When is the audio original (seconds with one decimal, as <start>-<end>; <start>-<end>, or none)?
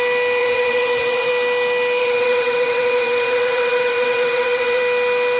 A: 0.0-0.4; 1.3-2.0; 4.8-5.4